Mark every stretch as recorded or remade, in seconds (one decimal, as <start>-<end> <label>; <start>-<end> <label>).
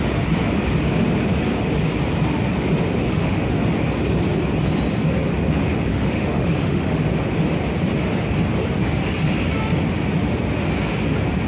0.0-3.1 recorded; 3.1-3.6 remade; 3.6-5.9 recorded; 5.9-7.0 remade; 7.0-11.5 recorded